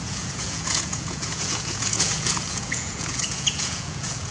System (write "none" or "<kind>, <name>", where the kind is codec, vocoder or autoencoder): vocoder, Vocos